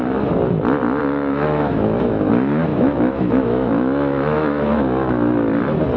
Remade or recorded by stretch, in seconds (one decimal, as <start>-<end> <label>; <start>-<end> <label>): 0.0-1.0 recorded; 1.0-2.3 remade; 2.3-2.7 recorded; 2.7-5.1 remade; 5.1-6.0 recorded